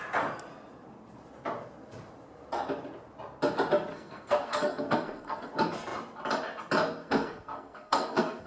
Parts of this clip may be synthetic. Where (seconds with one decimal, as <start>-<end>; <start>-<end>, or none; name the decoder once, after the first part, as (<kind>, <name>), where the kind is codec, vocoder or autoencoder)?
3.9-5.5 (codec, SNAC); 7.0-8.5